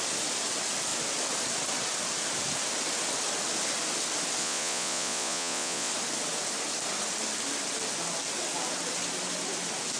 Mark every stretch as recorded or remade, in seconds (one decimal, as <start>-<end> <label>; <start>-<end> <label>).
0.0-4.4 recorded; 4.4-5.9 remade; 5.9-10.0 recorded